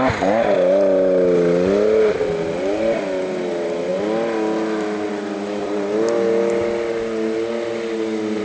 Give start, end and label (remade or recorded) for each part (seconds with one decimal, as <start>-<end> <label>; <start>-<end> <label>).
0.0-8.4 recorded

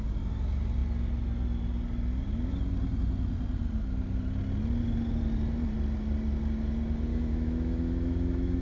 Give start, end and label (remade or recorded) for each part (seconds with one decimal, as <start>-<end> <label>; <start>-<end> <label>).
0.0-7.1 recorded; 7.1-8.6 remade